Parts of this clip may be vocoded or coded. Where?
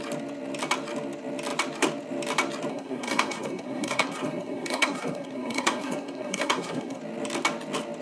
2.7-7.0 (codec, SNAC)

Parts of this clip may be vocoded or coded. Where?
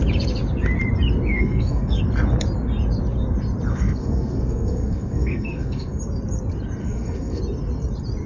1.3-2.0 (codec, SNAC); 3.7-6.0; 6.8-7.4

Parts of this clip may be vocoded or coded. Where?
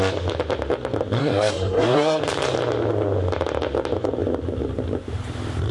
1.2-2.2 (codec, SNAC)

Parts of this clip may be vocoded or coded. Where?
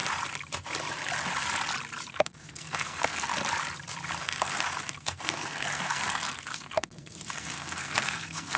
2.1-3.3 (codec, SNAC); 4.2-8.6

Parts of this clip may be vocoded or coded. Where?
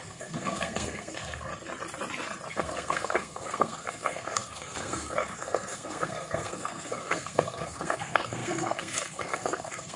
0.0-1.5 (codec, SNAC); 2.5-10.0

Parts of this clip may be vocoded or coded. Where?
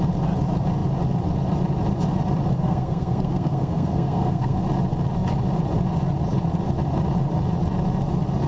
2.6-4.6 (codec, SNAC)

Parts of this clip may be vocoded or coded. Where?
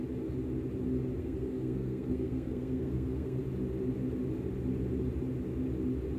1.2-3.4 (codec, SNAC)